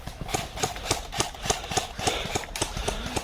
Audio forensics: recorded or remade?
remade